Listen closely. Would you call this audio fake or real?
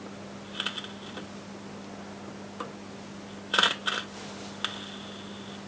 real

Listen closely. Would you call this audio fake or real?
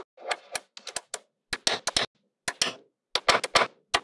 real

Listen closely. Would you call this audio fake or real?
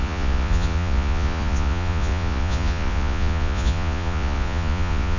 fake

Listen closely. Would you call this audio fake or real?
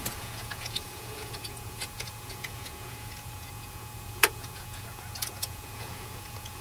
fake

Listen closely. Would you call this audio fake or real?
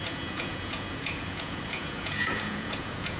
fake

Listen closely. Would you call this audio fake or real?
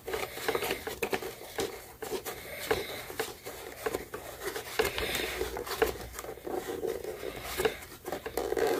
real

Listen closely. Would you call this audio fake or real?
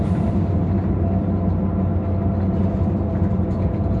real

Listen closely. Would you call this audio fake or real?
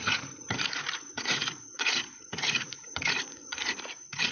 fake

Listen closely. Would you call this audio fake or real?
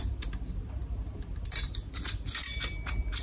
real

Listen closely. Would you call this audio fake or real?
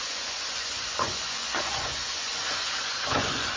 fake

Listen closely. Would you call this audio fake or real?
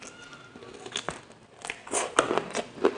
real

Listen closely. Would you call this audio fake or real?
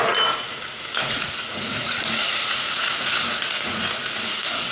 fake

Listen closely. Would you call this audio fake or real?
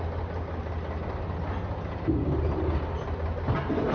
real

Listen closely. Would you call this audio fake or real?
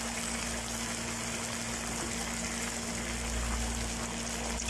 real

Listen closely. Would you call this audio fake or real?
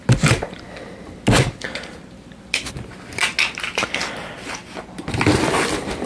real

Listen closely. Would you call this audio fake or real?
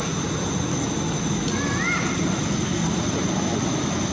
real